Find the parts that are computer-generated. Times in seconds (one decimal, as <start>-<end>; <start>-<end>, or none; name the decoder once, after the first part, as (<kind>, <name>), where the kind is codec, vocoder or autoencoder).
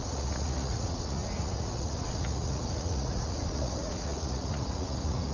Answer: 0.0-5.3 (vocoder, Vocos)